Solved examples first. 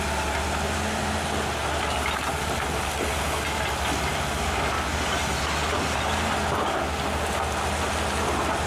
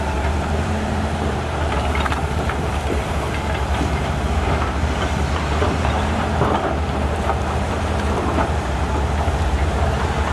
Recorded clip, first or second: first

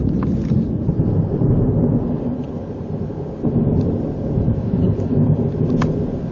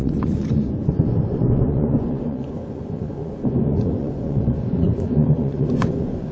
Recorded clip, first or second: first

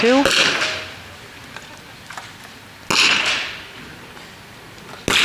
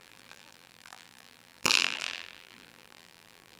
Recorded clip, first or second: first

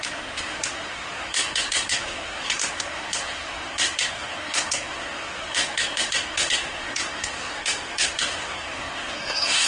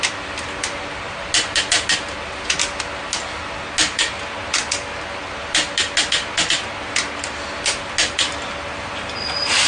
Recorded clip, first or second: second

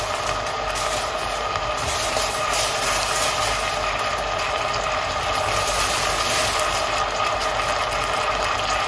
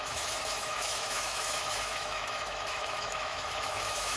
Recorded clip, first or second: first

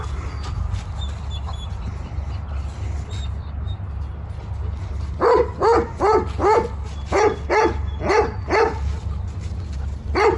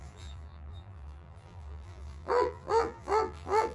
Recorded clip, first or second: first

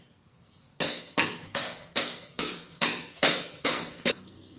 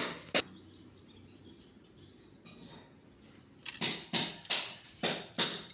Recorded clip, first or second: second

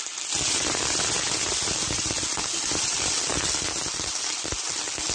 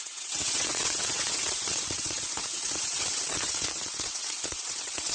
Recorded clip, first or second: first